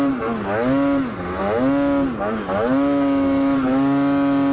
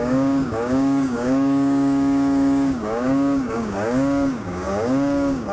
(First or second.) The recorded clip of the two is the first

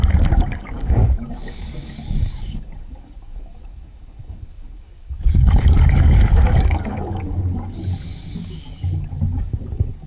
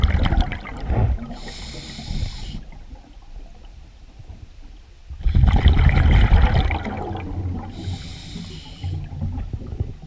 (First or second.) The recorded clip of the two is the second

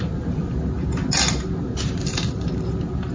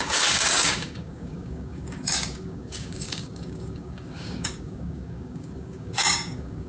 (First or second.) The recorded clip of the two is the first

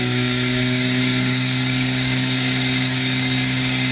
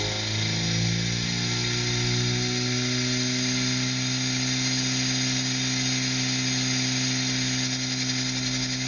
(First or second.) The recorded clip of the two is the second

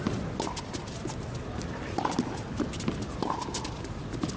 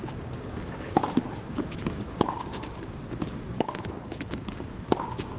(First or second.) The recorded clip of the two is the first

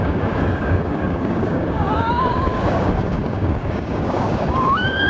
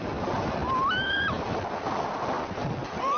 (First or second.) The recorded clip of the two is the second